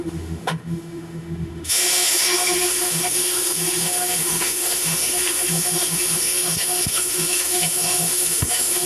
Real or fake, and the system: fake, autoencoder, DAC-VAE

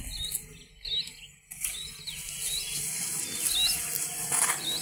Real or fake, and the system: real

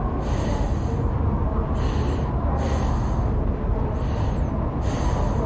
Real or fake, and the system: real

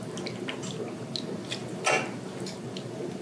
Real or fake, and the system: real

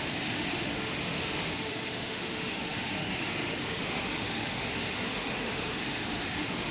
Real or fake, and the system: fake, autoencoder, DAC-VAE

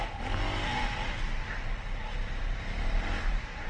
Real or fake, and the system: real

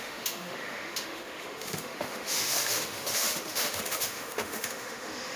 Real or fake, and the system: fake, autoencoder, DAC-VAE